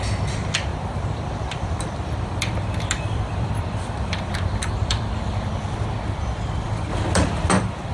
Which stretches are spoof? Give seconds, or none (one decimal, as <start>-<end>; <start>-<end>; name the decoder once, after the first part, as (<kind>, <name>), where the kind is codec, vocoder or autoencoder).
0.7-5.2 (vocoder, BigVGAN v2); 6.9-7.5